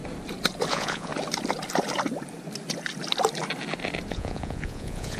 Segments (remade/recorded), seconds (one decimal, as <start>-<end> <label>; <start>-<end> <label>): 0.0-0.7 recorded; 0.7-1.1 remade; 1.1-4.1 recorded; 4.1-5.2 remade